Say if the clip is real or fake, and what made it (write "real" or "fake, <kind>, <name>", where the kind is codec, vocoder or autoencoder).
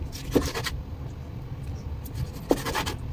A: real